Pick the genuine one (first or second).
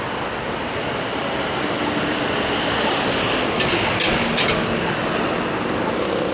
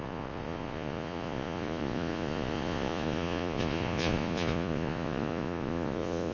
first